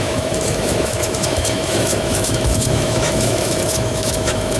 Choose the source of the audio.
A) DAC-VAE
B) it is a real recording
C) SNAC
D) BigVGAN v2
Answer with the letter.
A